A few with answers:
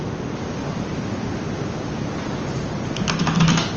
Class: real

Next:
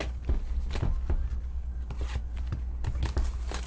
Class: real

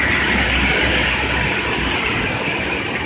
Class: real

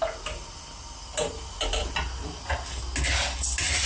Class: real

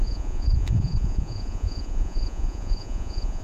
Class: fake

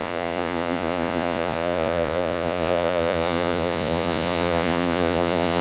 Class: fake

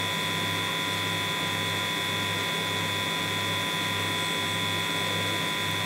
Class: real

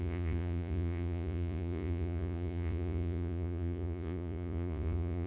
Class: fake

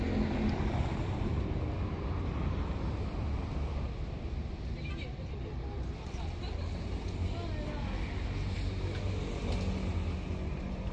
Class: real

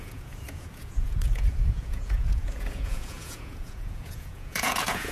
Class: fake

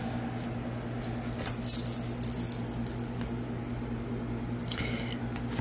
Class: real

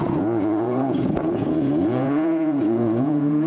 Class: fake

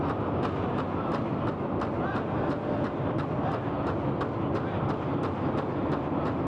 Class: real